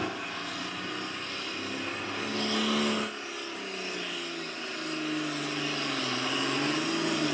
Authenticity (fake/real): real